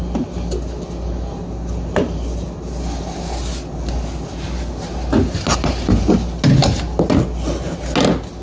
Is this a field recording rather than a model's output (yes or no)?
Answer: yes